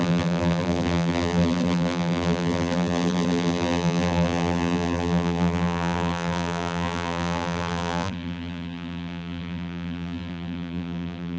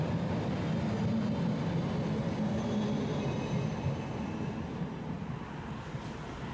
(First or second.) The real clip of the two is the second